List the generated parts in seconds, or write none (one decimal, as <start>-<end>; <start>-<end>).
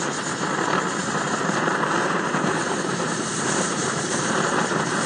1.0-4.1